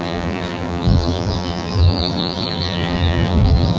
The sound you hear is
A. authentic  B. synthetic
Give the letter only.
B